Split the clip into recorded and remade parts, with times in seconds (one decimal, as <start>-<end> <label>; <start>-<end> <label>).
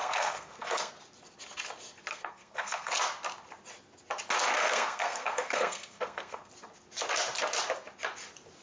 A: 0.0-0.9 remade; 0.9-2.1 recorded; 2.1-2.9 remade; 2.9-4.6 recorded; 4.6-6.5 remade; 6.5-8.6 recorded